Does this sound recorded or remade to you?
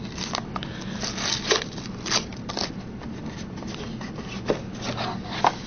recorded